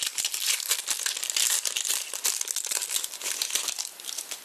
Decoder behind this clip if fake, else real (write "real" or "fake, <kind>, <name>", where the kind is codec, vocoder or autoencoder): real